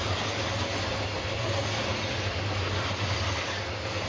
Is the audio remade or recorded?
recorded